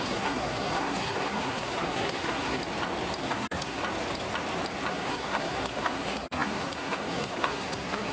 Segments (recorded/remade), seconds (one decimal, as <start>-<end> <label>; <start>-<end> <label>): 0.0-2.6 remade; 2.6-3.2 recorded; 3.2-3.8 remade; 3.8-4.9 recorded; 4.9-8.1 remade